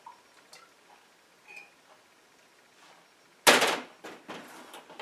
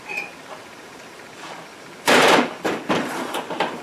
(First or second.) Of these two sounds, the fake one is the second